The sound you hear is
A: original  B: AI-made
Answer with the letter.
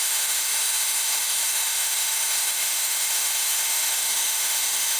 B